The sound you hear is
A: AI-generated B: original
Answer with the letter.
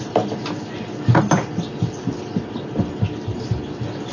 B